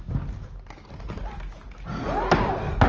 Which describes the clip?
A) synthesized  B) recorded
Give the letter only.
B